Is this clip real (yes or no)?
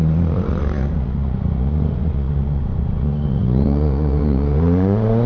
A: no